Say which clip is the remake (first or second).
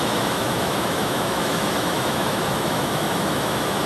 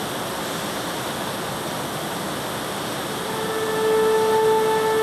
first